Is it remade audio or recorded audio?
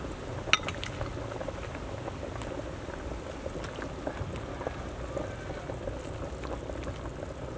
recorded